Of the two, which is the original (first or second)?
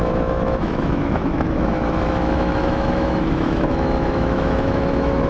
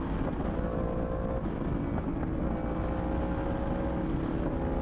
second